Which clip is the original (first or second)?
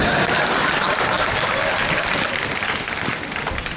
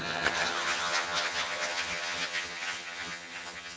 first